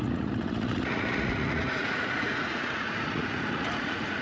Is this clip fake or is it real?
fake